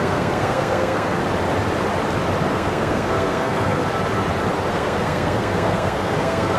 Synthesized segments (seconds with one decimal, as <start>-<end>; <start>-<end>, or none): 0.0-1.2; 2.5-3.8; 4.7-6.6